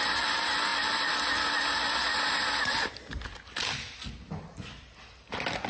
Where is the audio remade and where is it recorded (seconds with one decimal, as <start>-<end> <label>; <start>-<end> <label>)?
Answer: 0.0-5.7 recorded

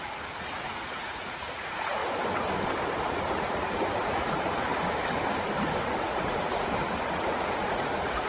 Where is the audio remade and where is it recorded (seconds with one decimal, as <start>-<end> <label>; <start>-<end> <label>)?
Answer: 0.0-2.0 remade; 2.0-3.1 recorded; 3.1-4.7 remade; 4.7-5.8 recorded; 5.8-8.3 remade

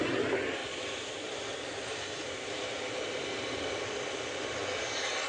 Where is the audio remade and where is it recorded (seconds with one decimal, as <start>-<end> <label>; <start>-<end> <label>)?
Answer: 0.0-0.6 recorded; 0.6-3.8 remade; 3.8-5.3 recorded

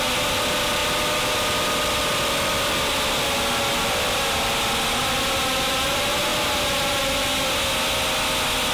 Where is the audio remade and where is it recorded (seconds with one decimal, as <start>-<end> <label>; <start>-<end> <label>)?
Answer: 0.0-8.7 recorded

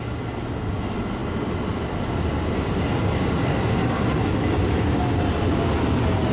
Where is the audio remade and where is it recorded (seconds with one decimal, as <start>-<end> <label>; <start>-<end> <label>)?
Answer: 0.0-6.3 recorded

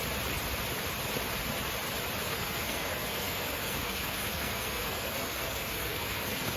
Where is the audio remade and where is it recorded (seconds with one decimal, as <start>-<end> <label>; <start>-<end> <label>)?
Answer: 0.0-2.2 recorded; 2.2-6.6 remade

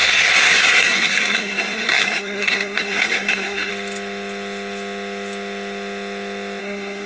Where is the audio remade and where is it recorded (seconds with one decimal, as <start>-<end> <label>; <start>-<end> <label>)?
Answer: 0.0-3.7 remade; 3.7-6.6 recorded; 6.6-7.1 remade